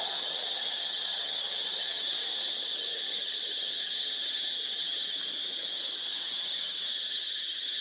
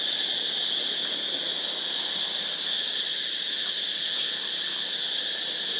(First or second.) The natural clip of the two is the second